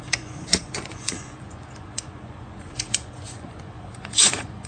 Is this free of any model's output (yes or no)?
no